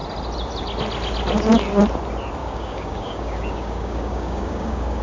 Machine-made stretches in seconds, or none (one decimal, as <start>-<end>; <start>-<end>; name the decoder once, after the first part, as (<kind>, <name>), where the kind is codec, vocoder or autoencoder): 2.4-5.0 (codec, DAC)